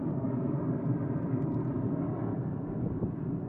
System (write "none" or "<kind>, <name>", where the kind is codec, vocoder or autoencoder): vocoder, BigVGAN v2